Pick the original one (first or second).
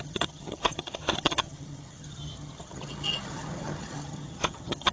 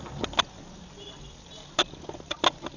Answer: second